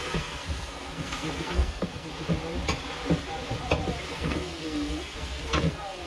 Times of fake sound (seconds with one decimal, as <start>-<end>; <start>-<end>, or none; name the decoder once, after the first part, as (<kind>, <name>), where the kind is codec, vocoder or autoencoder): 0.0-2.1 (codec, SNAC); 4.1-6.1